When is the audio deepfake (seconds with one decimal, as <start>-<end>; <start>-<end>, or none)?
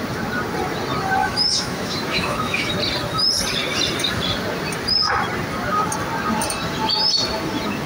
1.2-2.7